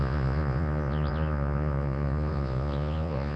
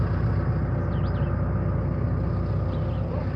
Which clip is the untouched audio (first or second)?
second